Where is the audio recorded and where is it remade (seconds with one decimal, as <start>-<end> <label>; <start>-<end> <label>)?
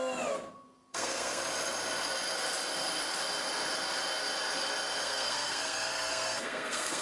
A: 0.0-0.9 recorded; 0.9-1.4 remade; 1.4-5.0 recorded; 5.0-7.0 remade